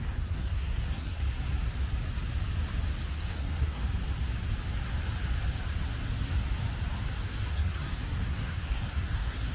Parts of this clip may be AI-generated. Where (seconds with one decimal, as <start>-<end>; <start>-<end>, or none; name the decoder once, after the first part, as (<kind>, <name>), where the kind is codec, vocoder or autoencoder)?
0.0-1.2 (codec, SNAC); 3.1-3.8; 7.5-9.5